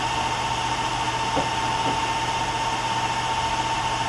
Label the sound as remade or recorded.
recorded